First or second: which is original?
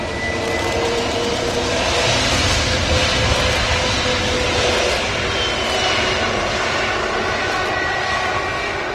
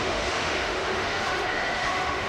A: first